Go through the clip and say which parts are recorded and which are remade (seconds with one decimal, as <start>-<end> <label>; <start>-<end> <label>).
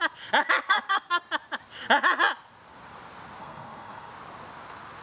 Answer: 0.0-0.6 recorded; 0.6-1.2 remade; 1.2-3.4 recorded; 3.4-4.1 remade; 4.1-5.0 recorded